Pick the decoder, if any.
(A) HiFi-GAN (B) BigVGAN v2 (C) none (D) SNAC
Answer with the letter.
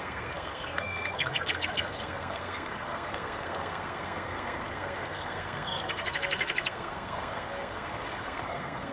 D